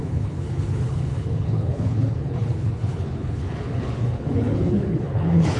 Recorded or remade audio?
remade